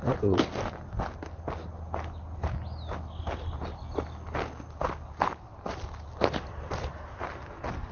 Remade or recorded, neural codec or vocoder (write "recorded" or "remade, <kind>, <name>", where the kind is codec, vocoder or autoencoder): recorded